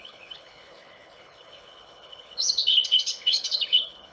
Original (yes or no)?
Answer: no